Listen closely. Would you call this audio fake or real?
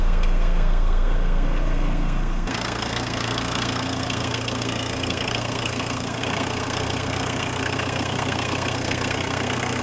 fake